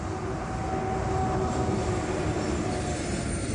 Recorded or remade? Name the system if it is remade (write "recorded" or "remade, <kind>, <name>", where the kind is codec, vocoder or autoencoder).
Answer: recorded